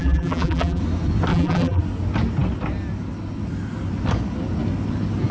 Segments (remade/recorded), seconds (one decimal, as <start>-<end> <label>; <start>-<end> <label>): 0.0-0.8 remade; 0.8-1.3 recorded; 1.3-1.8 remade; 1.8-5.3 recorded